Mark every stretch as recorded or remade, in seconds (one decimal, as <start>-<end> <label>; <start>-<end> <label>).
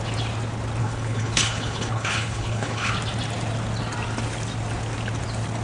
0.0-0.8 recorded; 0.8-2.9 remade; 2.9-5.6 recorded